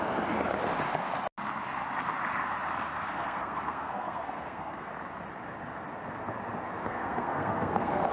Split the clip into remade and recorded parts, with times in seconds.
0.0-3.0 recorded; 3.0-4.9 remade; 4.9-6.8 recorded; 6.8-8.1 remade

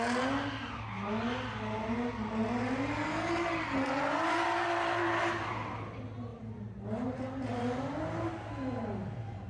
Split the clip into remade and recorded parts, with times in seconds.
0.0-9.5 recorded

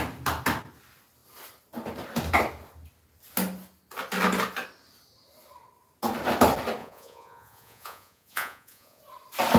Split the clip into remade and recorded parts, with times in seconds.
0.0-6.8 recorded; 6.8-9.0 remade; 9.0-9.6 recorded

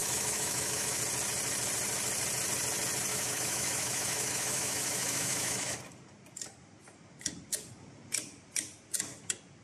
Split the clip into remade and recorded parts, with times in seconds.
0.0-1.0 remade; 1.0-3.1 recorded; 3.1-5.8 remade; 5.8-9.6 recorded

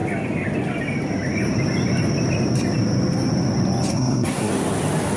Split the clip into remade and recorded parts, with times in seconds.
0.0-3.9 recorded; 3.9-4.5 remade; 4.5-5.2 recorded

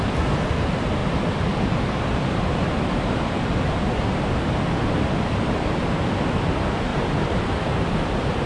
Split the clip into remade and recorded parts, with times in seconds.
0.0-6.9 recorded; 6.9-7.6 remade; 7.6-8.5 recorded

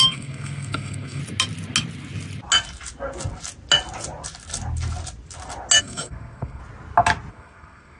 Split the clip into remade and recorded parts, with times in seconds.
0.0-1.2 remade; 1.2-5.8 recorded; 5.8-6.6 remade; 6.6-7.3 recorded; 7.3-8.0 remade

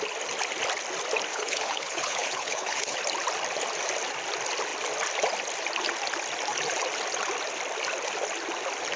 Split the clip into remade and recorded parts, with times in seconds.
0.0-1.3 recorded; 1.3-3.0 remade; 3.0-9.0 recorded